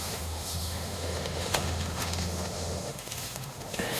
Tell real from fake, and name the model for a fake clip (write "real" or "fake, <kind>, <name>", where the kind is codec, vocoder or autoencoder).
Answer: fake, autoencoder, DAC-VAE